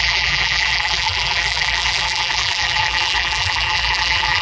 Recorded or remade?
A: remade